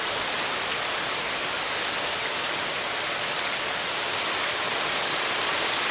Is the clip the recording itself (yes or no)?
yes